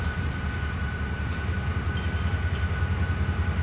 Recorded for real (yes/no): yes